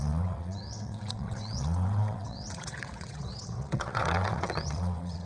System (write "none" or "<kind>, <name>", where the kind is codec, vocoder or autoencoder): vocoder, WaveNeXt